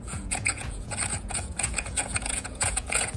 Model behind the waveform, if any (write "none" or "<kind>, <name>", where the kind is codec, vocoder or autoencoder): vocoder, Vocos